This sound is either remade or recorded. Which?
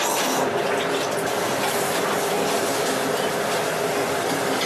recorded